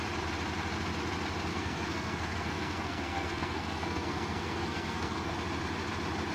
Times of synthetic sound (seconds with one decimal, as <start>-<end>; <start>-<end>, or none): 1.5-5.3

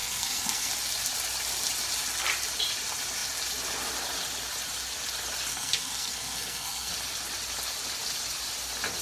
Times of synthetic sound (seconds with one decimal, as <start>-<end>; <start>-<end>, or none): 0.0-0.7; 5.5-6.9

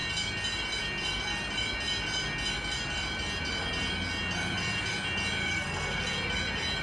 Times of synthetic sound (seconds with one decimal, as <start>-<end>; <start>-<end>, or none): 5.4-6.0

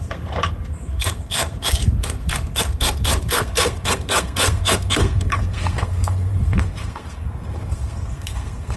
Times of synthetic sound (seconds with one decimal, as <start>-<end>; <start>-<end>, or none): 0.0-8.8

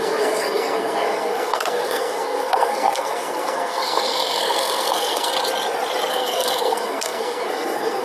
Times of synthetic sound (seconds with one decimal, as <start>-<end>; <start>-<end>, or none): 0.0-5.3; 6.1-8.0